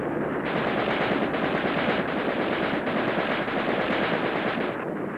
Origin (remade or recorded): recorded